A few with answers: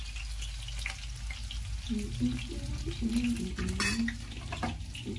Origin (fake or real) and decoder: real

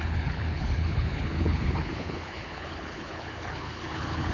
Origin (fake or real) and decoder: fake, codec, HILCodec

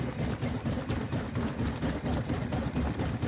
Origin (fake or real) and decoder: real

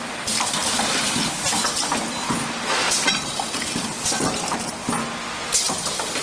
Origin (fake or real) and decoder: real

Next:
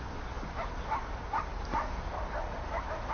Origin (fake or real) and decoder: real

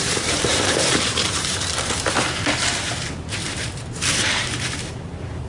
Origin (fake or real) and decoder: fake, vocoder, BigVGAN v2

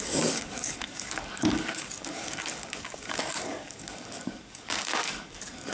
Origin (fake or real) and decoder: fake, codec, DAC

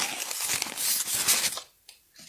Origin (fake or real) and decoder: real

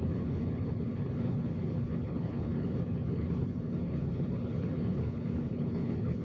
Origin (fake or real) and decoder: fake, codec, HILCodec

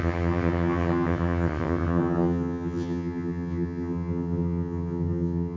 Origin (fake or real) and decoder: fake, vocoder, HiFi-GAN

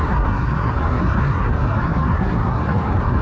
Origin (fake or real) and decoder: fake, codec, SNAC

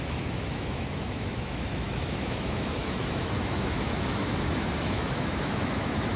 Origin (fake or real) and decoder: fake, autoencoder, DAC-VAE